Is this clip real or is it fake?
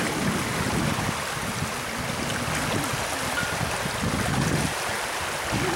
real